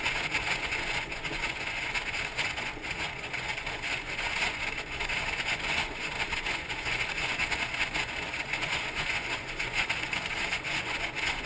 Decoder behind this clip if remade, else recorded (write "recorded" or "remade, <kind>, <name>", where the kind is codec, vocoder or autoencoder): remade, vocoder, Vocos